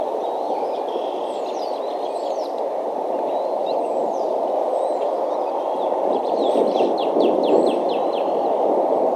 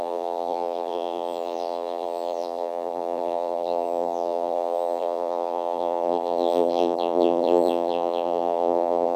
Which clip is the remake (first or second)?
second